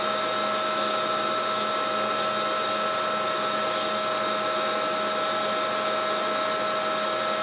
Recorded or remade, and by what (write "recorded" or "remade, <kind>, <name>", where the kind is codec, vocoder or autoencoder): recorded